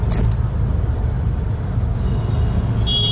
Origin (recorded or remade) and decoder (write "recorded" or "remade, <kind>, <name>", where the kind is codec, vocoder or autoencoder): recorded